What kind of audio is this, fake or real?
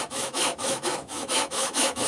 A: fake